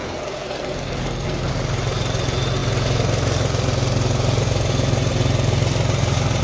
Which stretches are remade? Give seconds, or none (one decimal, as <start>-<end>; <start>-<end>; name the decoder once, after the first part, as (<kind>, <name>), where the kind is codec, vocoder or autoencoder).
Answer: 0.0-1.5 (codec, SNAC)